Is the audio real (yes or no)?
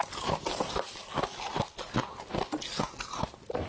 yes